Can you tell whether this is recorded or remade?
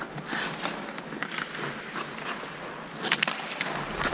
recorded